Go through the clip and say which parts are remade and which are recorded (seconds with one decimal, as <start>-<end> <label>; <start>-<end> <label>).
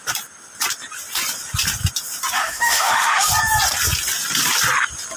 0.0-2.4 recorded; 2.4-3.3 remade; 3.3-5.2 recorded